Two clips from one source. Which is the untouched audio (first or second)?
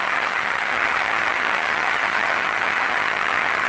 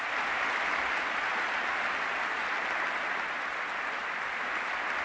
second